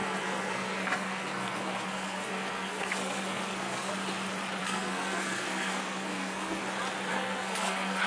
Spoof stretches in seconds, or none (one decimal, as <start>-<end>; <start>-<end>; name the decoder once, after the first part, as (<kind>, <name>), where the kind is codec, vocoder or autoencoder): 0.0-3.9 (codec, SNAC); 4.6-6.6; 7.1-8.1